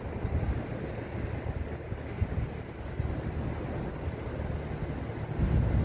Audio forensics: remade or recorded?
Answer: recorded